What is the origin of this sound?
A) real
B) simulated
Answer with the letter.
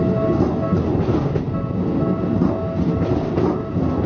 A